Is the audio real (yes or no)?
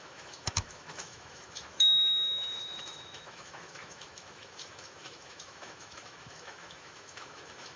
no